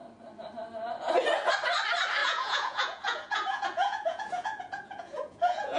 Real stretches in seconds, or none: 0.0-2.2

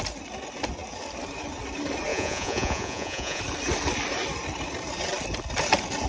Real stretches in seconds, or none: 0.0-2.1; 3.4-6.1

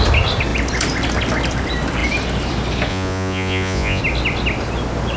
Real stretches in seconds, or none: 0.0-2.9; 4.0-5.2